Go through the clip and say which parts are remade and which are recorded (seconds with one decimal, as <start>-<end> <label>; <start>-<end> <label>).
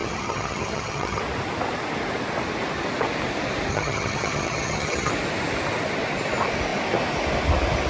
0.0-1.2 remade; 1.2-3.7 recorded; 3.7-5.1 remade; 5.1-7.9 recorded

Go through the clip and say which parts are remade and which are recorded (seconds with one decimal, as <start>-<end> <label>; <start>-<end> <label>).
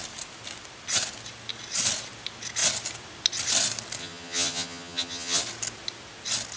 0.0-4.0 recorded; 4.0-5.4 remade; 5.4-6.6 recorded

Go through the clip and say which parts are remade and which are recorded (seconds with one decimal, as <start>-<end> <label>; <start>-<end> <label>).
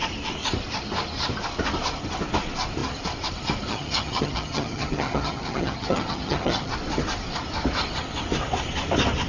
0.0-3.7 recorded; 3.7-6.7 remade; 6.7-9.3 recorded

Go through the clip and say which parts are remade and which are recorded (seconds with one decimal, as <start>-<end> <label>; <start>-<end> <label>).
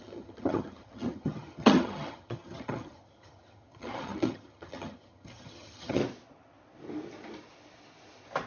0.0-6.0 remade; 6.0-8.5 recorded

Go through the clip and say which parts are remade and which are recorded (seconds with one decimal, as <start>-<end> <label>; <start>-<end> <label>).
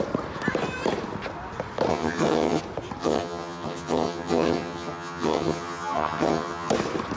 0.0-1.9 recorded; 1.9-2.6 remade; 2.6-3.0 recorded; 3.0-6.7 remade; 6.7-7.2 recorded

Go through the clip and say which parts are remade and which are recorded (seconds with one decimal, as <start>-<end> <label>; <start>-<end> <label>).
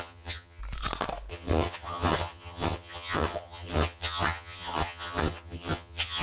0.0-0.6 remade; 0.6-1.3 recorded; 1.3-6.2 remade